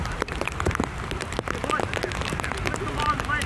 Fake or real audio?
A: real